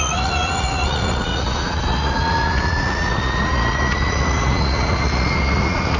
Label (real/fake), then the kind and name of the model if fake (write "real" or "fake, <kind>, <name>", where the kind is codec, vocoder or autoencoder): fake, vocoder, Vocos